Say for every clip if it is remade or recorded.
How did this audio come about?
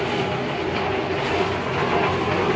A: recorded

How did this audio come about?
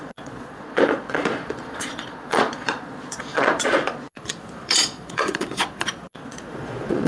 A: remade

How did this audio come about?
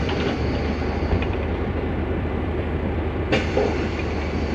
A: recorded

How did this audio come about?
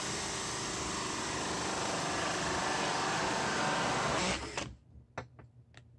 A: recorded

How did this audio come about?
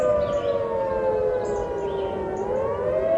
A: recorded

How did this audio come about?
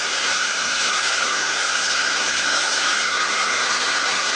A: remade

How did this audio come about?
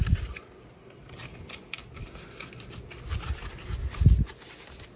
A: recorded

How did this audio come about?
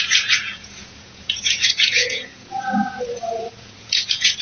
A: remade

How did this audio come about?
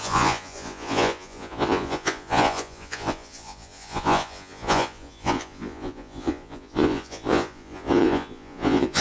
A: remade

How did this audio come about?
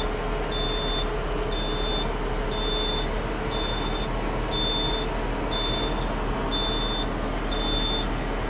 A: recorded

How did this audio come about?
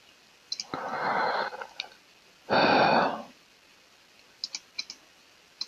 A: recorded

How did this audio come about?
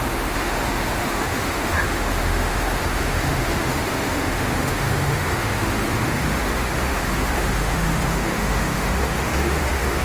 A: remade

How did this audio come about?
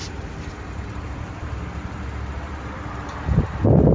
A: remade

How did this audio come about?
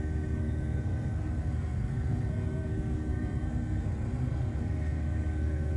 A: remade